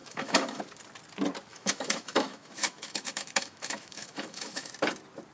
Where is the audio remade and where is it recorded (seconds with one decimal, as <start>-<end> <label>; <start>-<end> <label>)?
0.0-0.6 remade; 0.6-1.5 recorded; 1.5-4.7 remade; 4.7-5.3 recorded